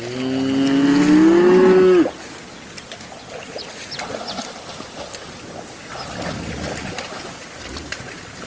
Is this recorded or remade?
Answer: recorded